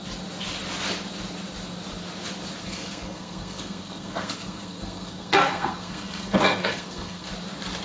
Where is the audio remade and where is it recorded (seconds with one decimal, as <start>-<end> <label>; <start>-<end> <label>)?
0.0-2.6 recorded; 2.6-7.3 remade; 7.3-7.8 recorded